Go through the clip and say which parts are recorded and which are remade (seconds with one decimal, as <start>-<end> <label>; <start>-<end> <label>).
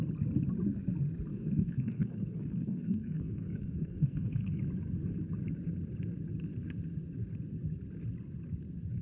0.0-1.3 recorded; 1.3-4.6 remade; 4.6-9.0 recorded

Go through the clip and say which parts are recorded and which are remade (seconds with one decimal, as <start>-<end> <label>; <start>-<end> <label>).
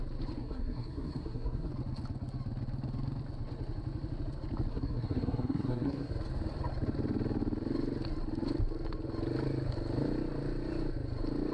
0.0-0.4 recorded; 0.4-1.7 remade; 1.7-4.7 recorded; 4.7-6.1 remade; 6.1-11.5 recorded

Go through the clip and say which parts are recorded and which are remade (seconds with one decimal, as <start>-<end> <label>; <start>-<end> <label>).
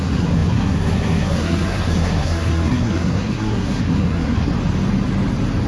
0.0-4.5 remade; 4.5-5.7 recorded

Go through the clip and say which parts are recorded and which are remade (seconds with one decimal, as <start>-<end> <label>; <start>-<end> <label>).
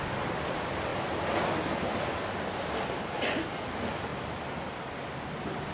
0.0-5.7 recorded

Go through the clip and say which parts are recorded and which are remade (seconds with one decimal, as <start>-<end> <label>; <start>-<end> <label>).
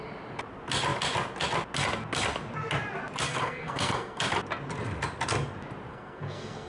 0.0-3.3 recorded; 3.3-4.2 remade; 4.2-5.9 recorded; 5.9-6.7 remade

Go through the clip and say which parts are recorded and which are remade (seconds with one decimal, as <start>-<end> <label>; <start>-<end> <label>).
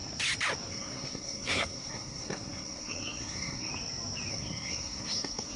0.0-0.7 recorded; 0.7-3.7 remade; 3.7-4.3 recorded; 4.3-5.6 remade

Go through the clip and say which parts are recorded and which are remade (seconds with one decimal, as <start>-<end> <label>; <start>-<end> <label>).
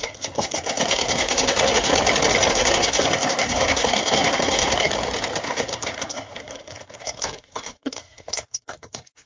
0.0-1.9 remade; 1.9-2.5 recorded; 2.5-4.9 remade; 4.9-5.4 recorded; 5.4-9.3 remade